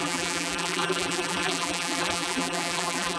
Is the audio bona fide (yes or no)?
no